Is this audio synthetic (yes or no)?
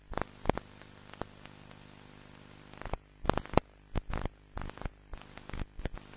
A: no